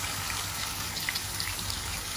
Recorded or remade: remade